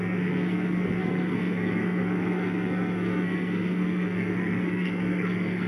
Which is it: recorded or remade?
remade